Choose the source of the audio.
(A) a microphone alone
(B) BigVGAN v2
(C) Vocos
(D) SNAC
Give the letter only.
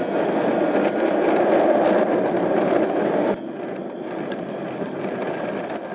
A